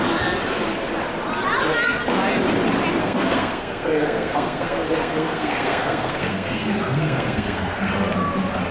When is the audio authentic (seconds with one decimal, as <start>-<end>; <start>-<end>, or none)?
0.0-3.0; 7.9-8.7